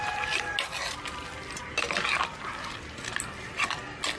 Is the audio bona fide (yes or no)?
yes